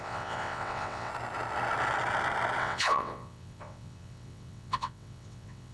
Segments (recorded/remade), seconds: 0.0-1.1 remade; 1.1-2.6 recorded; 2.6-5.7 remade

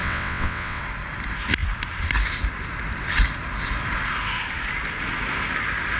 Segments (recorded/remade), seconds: 0.0-0.8 remade; 0.8-6.0 recorded